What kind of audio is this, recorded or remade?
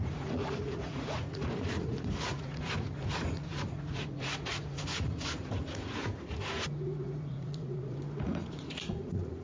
remade